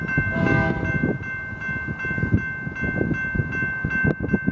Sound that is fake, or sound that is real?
real